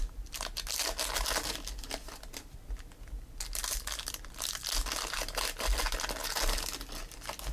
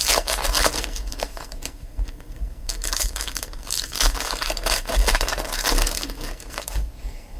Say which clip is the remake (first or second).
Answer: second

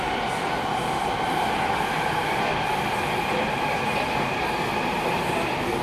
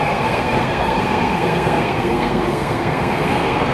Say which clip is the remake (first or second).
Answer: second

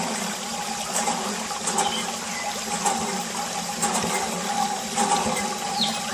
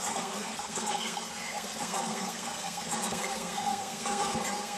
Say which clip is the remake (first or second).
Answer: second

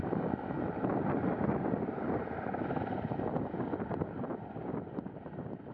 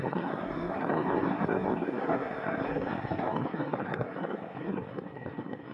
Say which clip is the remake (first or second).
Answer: second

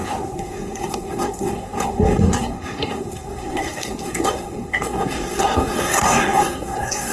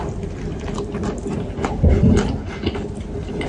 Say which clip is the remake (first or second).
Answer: first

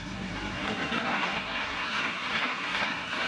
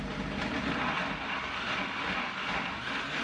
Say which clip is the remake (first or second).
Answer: first